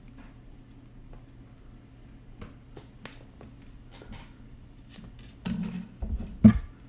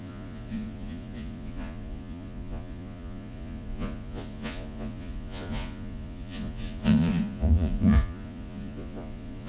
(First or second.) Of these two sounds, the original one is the first